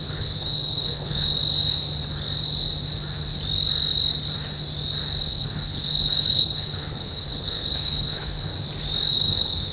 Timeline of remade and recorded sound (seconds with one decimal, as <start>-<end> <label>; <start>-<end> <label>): 0.0-1.4 remade; 1.4-5.2 recorded; 5.2-8.5 remade; 8.5-9.1 recorded; 9.1-9.7 remade